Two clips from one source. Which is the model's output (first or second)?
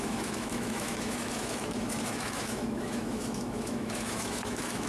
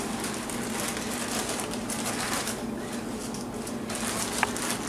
first